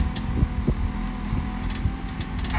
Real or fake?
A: real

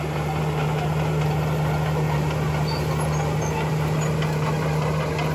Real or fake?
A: real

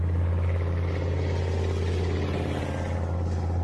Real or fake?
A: real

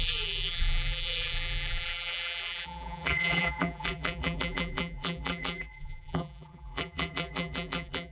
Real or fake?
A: fake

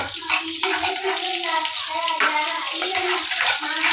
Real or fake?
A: fake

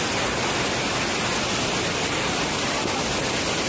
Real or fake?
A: real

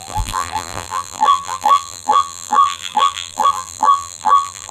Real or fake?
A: fake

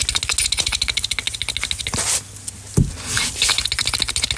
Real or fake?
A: real